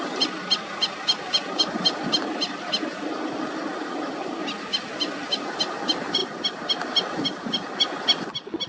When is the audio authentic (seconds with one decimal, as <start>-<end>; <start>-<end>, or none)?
0.0-8.7